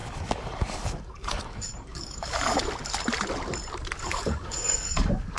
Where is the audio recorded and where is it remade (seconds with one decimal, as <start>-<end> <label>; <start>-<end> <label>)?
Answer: 0.0-2.6 remade; 2.6-4.0 recorded; 4.0-5.4 remade